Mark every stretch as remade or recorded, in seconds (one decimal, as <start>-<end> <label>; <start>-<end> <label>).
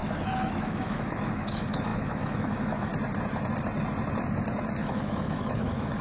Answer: 0.0-2.9 remade; 2.9-4.8 recorded; 4.8-6.0 remade